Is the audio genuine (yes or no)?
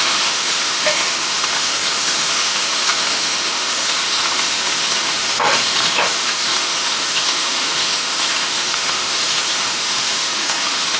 no